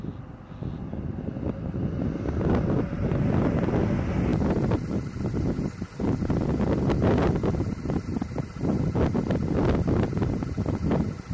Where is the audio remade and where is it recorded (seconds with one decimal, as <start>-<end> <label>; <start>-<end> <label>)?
0.0-11.3 recorded